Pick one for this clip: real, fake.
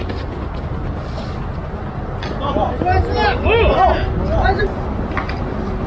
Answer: real